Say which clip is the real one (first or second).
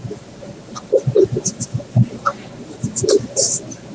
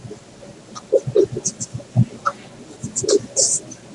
second